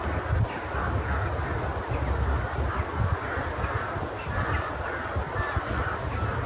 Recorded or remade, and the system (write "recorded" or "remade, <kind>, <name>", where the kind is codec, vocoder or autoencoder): recorded